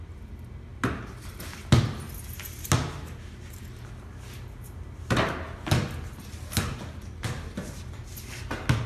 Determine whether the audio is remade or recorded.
recorded